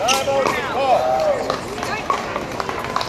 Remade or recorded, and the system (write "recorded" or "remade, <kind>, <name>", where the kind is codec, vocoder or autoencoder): recorded